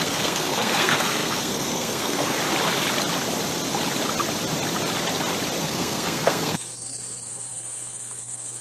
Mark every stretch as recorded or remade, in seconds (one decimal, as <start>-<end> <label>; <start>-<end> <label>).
0.0-2.4 remade; 2.4-5.6 recorded; 5.6-8.6 remade

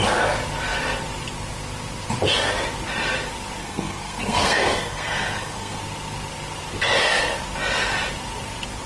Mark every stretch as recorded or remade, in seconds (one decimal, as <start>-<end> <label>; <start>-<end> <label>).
0.0-3.6 recorded; 3.6-5.8 remade; 5.8-8.9 recorded

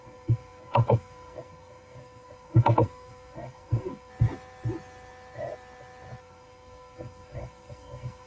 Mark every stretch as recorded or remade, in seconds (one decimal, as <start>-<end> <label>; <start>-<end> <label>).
0.0-4.1 remade; 4.1-6.2 recorded; 6.2-8.3 remade

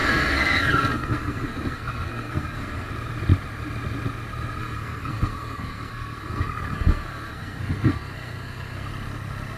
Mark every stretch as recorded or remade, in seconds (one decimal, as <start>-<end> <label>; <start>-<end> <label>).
0.0-2.9 remade; 2.9-4.6 recorded; 4.6-8.9 remade; 8.9-9.6 recorded

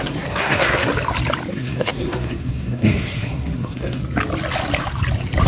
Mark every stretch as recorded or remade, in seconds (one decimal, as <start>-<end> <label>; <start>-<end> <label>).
0.0-0.9 remade; 0.9-1.5 recorded; 1.5-4.0 remade; 4.0-5.5 recorded

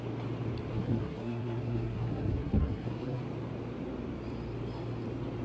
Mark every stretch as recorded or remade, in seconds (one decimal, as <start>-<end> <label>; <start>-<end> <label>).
0.0-0.7 recorded; 0.7-3.2 remade; 3.2-5.4 recorded

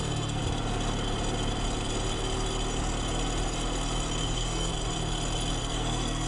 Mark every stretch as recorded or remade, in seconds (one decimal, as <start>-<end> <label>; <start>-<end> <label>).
0.0-0.4 remade; 0.4-4.2 recorded; 4.2-4.7 remade; 4.7-5.6 recorded; 5.6-6.3 remade